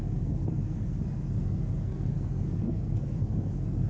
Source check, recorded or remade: remade